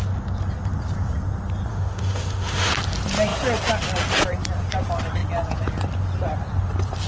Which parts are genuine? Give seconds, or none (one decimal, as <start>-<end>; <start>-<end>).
0.0-1.7; 2.7-7.1